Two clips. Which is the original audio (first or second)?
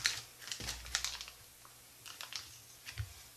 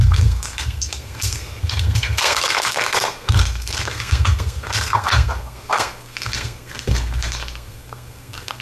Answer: first